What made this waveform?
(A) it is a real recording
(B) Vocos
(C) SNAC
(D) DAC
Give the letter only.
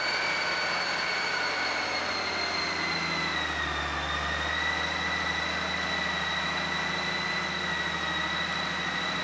A